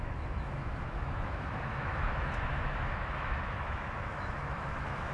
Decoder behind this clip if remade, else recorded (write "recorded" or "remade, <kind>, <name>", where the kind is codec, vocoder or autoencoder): remade, autoencoder, DAC-VAE